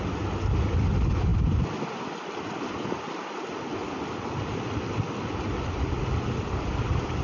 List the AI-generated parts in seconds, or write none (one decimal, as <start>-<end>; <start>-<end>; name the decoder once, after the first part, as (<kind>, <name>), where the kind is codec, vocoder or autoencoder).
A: none